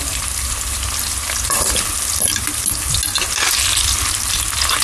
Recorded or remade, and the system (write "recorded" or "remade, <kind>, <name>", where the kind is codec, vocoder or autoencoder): recorded